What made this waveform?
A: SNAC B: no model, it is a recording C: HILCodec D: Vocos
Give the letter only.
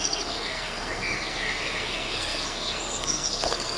A